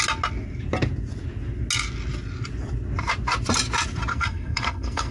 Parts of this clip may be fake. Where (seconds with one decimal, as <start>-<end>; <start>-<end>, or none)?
4.1-5.1